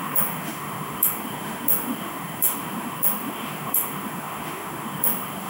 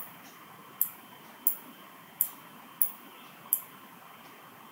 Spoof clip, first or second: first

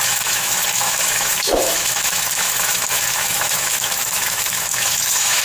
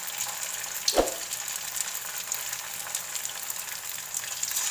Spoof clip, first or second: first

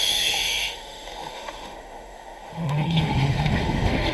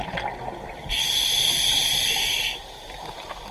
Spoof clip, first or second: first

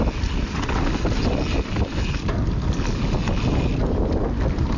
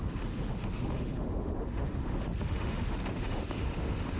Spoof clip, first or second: second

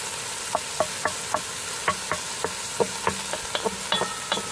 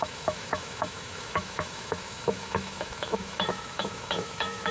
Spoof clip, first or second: second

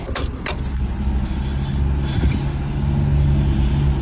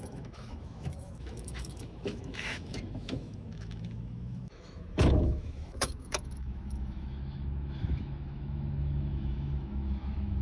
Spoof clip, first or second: second